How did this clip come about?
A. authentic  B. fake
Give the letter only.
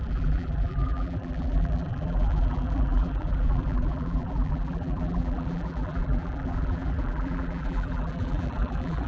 B